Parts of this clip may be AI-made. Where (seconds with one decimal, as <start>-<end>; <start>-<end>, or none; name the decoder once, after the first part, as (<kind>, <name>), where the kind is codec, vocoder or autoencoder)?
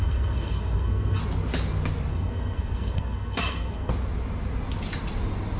0.0-1.2 (codec, SNAC); 2.1-3.9